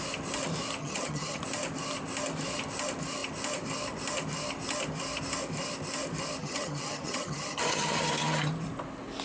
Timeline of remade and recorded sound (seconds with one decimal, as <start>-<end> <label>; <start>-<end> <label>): 0.0-0.8 recorded; 0.8-1.4 remade; 1.4-6.4 recorded; 6.4-8.5 remade; 8.5-9.2 recorded